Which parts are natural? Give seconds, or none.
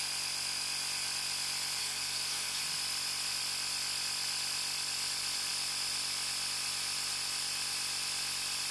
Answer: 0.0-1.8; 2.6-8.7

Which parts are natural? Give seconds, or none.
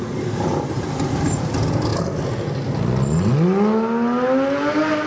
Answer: 0.0-5.1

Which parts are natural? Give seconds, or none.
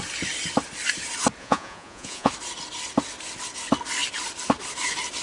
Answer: 0.0-1.4; 2.3-5.2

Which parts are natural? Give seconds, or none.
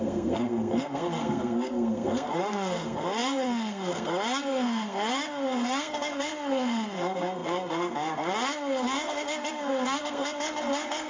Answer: none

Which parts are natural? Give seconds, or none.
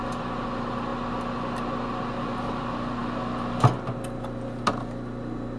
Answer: 0.0-5.6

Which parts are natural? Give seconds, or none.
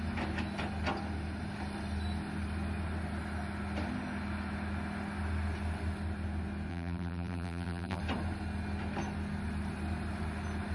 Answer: 0.0-6.7; 8.0-10.7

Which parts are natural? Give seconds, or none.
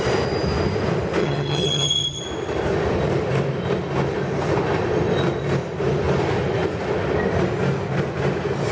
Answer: 0.0-1.2; 2.2-8.7